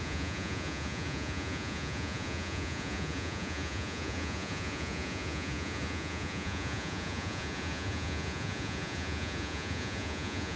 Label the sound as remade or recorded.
remade